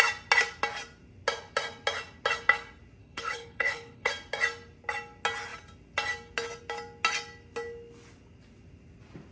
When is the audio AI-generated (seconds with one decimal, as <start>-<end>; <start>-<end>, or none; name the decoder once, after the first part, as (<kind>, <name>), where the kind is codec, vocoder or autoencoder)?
3.0-4.1 (codec, HILCodec)